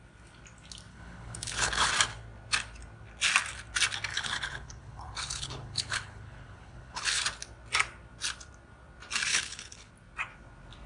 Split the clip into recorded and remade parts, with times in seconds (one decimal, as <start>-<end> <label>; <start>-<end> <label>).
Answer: 0.0-0.9 recorded; 0.9-1.9 remade; 1.9-4.1 recorded; 4.1-7.2 remade; 7.2-9.3 recorded; 9.3-9.9 remade; 9.9-10.9 recorded